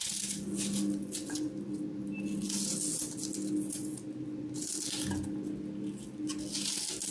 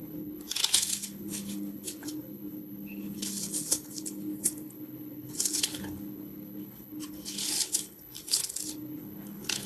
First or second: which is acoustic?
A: first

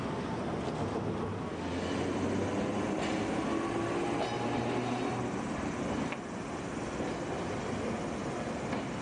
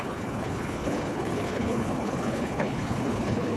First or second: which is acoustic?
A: first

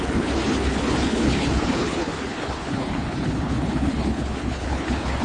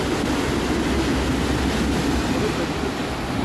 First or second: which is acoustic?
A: second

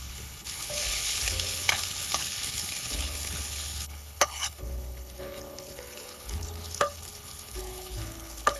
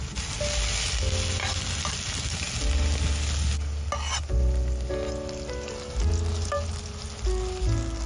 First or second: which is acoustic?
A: second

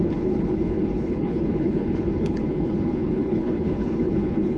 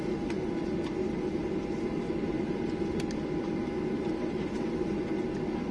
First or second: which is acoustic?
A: second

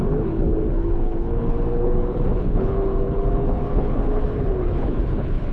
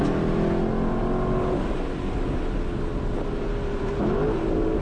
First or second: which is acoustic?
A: second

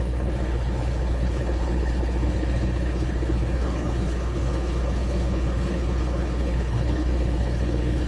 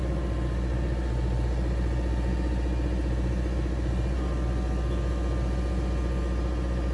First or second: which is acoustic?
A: second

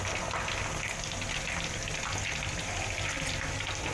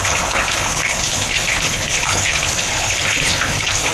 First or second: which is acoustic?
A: first